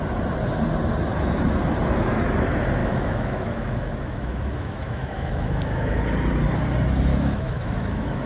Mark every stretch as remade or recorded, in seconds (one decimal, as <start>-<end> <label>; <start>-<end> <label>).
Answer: 0.0-2.8 recorded; 2.8-6.0 remade; 6.0-7.1 recorded; 7.1-8.3 remade